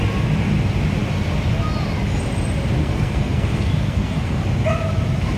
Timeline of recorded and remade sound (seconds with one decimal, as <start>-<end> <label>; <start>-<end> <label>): 0.0-2.8 recorded; 2.8-4.4 remade; 4.4-5.4 recorded